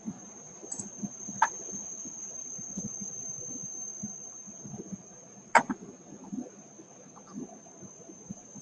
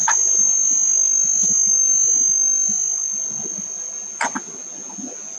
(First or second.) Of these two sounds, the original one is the second